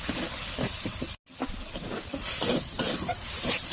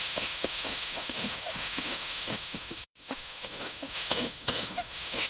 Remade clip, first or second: second